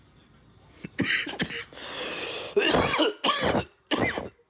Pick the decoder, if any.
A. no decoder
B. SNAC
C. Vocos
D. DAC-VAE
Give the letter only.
A